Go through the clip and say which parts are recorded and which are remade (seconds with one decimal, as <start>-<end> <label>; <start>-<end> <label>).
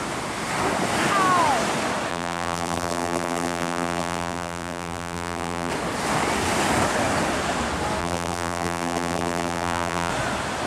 0.0-2.1 recorded; 2.1-5.7 remade; 5.7-8.0 recorded; 8.0-10.1 remade; 10.1-10.7 recorded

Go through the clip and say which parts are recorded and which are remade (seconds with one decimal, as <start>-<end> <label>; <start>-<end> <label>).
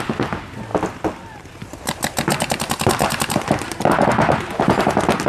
0.0-0.7 recorded; 0.7-1.8 remade; 1.8-3.0 recorded; 3.0-4.4 remade; 4.4-5.3 recorded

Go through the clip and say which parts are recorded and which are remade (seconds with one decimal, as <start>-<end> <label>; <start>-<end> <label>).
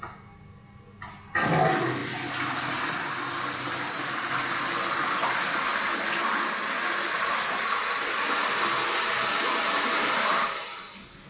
0.0-11.3 recorded